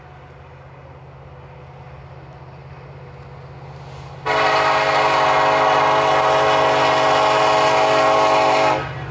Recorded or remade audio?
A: recorded